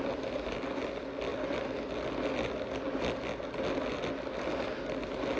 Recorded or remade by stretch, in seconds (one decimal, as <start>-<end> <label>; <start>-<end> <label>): 0.0-5.4 recorded